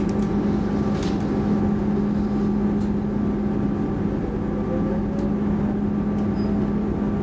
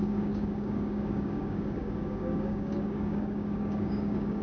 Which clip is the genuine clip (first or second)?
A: first